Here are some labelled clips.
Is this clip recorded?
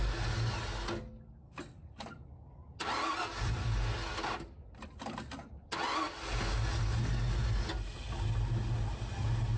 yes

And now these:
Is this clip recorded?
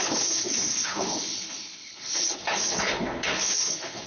no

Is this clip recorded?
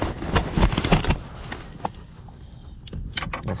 yes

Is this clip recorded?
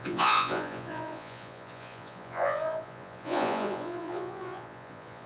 no